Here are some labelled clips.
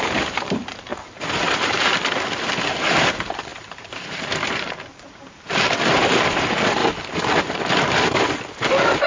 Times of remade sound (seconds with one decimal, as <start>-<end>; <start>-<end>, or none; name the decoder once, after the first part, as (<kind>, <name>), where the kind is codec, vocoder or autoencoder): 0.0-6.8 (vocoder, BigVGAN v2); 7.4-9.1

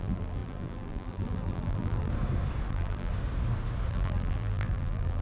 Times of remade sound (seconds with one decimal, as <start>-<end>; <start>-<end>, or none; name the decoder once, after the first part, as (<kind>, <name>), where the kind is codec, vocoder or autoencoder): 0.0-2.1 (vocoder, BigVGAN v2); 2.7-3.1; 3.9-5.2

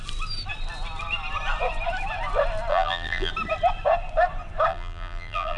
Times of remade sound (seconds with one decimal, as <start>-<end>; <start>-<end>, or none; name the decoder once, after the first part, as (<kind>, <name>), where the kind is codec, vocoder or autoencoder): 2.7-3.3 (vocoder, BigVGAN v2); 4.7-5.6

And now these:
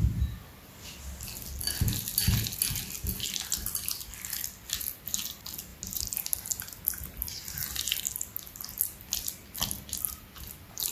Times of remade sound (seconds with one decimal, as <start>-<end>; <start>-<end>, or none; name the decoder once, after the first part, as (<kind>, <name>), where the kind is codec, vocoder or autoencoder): none

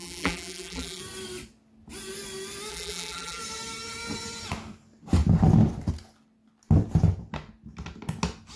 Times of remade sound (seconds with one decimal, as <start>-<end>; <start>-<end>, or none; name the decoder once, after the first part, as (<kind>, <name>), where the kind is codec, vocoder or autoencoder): 0.0-1.0 (vocoder, BigVGAN v2); 2.7-3.4

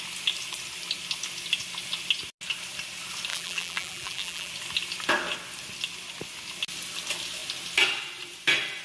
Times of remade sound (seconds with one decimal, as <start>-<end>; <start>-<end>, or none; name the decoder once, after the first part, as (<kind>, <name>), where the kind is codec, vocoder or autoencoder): 3.3-4.5 (vocoder, BigVGAN v2)

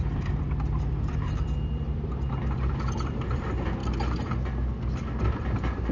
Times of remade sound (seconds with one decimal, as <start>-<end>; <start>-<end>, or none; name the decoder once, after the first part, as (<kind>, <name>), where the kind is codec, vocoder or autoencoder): 0.0-3.8 (vocoder, BigVGAN v2); 5.2-5.9